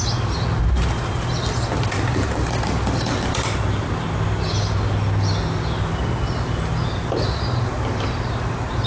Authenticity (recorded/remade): recorded